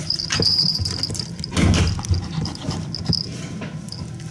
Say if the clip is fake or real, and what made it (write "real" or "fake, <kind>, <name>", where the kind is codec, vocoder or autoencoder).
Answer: real